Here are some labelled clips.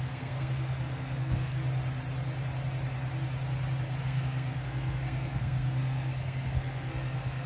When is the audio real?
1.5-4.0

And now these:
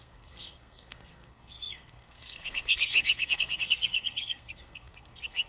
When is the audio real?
none

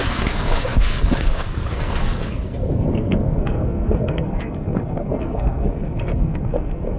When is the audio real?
none